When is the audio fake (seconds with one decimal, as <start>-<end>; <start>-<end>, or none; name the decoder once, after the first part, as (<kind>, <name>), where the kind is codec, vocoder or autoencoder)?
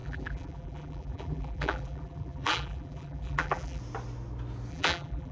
0.0-3.8 (vocoder, BigVGAN v2); 4.7-5.3